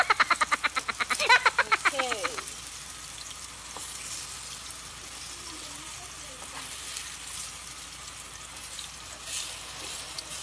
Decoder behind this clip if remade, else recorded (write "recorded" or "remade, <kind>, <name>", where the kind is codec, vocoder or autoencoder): recorded